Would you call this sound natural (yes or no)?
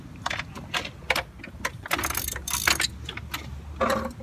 yes